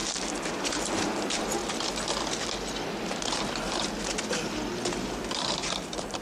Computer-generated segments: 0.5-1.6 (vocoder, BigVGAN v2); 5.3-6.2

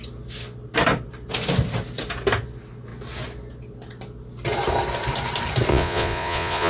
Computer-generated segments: 5.7-6.7 (vocoder, Vocos)

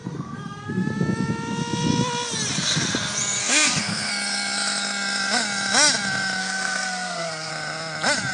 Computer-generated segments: 0.0-0.9 (codec, SNAC); 3.4-4.1; 6.4-7.5

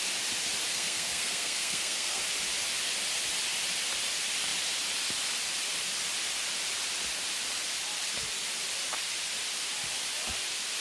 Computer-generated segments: 0.7-2.2 (codec, SNAC)

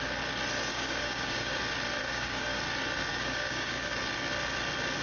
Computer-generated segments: 0.7-1.6 (codec, DAC); 2.0-2.6; 3.1-4.0

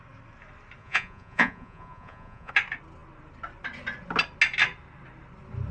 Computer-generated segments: 0.8-2.5 (vocoder, Vocos)

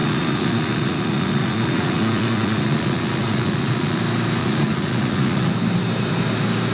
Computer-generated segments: 0.0-4.0 (vocoder, Vocos); 4.4-5.5